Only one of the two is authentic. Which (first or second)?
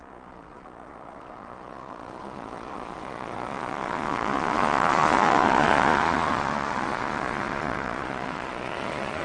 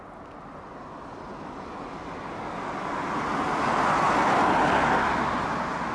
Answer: second